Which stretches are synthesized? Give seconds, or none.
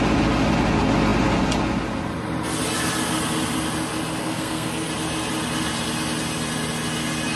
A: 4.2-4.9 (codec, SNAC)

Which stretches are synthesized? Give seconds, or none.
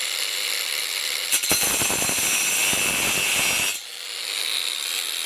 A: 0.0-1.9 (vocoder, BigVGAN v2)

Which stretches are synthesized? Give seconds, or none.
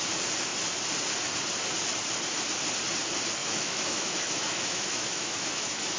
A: 3.4-6.0 (autoencoder, DAC-VAE)